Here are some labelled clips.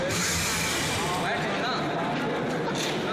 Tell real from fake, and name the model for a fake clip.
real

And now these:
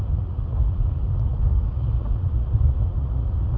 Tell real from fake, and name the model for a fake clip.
fake, vocoder, Vocos